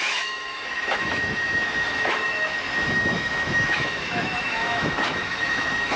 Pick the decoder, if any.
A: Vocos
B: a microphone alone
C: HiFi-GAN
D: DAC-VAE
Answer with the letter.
D